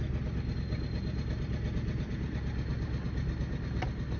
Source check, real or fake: real